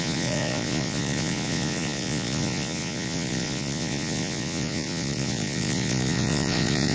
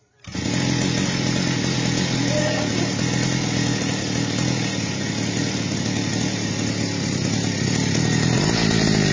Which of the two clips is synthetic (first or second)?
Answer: first